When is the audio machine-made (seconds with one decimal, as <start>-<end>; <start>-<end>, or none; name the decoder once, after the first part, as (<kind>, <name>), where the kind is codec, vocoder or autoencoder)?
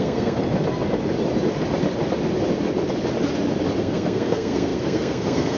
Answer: 0.0-0.4 (codec, SNAC); 3.8-5.6